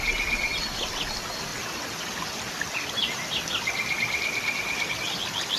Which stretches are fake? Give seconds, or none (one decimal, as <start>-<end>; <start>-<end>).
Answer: none